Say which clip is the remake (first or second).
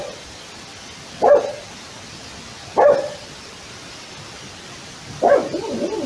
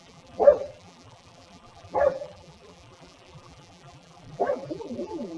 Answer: second